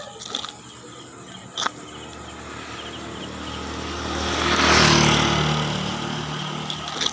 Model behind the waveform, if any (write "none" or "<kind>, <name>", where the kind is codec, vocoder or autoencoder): none